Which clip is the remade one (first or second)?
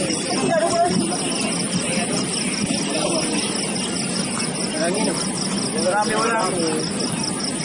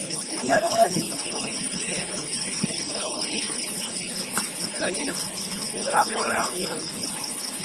second